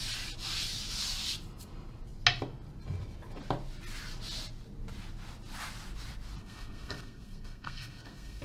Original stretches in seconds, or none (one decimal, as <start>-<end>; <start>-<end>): 0.0-6.4